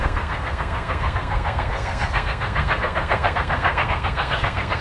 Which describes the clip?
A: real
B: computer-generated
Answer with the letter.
B